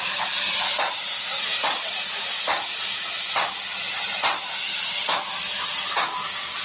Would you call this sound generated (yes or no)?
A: no